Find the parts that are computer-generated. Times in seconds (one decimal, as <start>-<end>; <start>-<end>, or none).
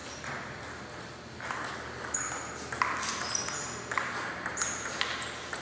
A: none